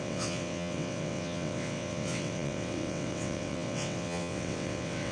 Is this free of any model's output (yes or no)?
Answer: no